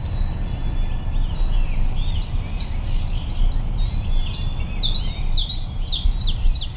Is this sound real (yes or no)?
yes